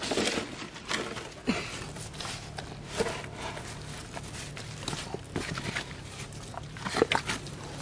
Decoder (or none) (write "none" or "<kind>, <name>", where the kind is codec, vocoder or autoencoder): none